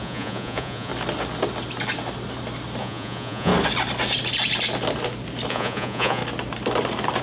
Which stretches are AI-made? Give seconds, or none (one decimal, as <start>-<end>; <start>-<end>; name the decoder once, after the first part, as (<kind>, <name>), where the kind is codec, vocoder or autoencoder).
0.0-0.9 (vocoder, Vocos); 2.8-3.5; 5.5-6.2